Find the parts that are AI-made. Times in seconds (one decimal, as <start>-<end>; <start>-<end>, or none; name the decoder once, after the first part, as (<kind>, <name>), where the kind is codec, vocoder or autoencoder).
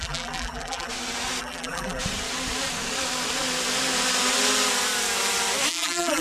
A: 0.0-0.9 (vocoder, BigVGAN v2); 1.4-2.0; 5.7-6.2